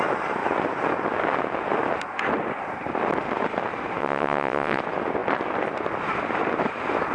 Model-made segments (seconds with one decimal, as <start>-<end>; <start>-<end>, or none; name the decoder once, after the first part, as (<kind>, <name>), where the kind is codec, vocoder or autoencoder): 4.0-4.8 (vocoder, WaveNeXt)